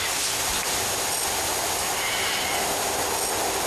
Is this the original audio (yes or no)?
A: yes